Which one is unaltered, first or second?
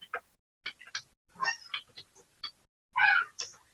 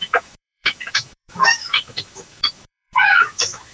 first